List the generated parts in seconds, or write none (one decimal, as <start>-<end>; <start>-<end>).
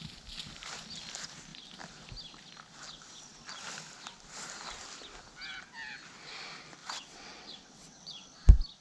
6.8-8.3